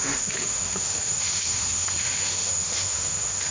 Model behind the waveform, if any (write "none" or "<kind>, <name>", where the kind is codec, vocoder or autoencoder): autoencoder, DAC-VAE